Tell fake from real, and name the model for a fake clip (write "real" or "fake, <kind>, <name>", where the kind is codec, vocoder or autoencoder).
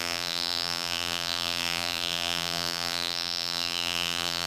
fake, vocoder, BigVGAN v2